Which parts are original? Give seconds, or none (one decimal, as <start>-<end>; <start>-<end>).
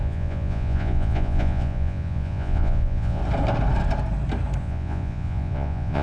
3.2-4.6